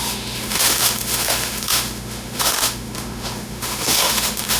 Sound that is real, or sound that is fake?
fake